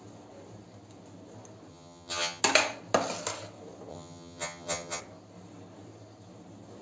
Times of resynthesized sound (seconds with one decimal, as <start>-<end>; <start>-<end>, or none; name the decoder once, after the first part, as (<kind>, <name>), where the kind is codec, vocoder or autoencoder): 1.7-2.4 (vocoder, HiFi-GAN); 3.9-5.0